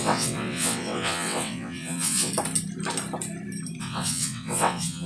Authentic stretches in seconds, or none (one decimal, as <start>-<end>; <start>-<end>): 2.3-3.8